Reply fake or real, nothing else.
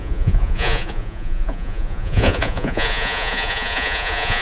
fake